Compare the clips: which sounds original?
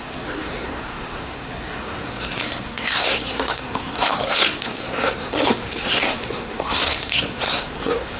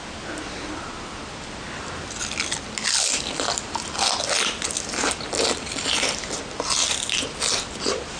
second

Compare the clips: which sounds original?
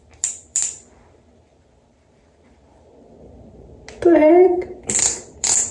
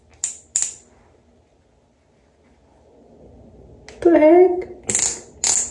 second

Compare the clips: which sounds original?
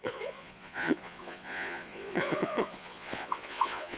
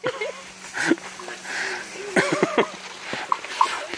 second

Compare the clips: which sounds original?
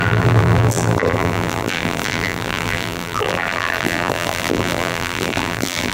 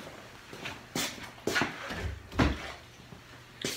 second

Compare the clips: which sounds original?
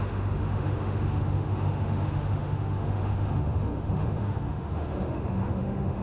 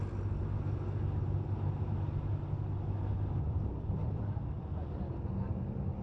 second